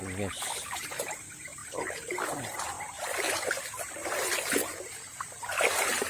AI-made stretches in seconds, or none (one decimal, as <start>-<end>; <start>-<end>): none